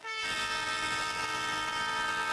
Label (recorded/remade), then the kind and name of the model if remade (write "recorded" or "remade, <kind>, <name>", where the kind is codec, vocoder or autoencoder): remade, vocoder, BigVGAN v2